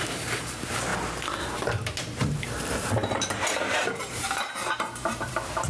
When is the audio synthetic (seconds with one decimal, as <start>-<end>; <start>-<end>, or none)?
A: 0.0-0.9; 1.4-5.7